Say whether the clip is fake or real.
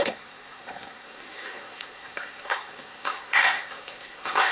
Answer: fake